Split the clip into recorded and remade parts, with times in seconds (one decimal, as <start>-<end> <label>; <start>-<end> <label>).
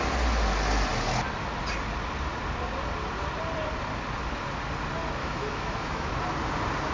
0.0-5.2 recorded; 5.2-6.1 remade; 6.1-6.9 recorded